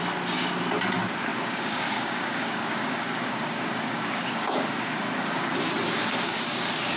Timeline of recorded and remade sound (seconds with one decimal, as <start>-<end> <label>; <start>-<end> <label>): 0.0-1.3 recorded; 1.3-5.5 remade; 5.5-7.0 recorded

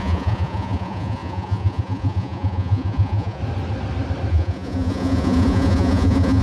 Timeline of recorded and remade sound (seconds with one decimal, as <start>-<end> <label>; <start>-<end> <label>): 0.0-3.4 remade; 3.4-4.3 recorded; 4.3-6.4 remade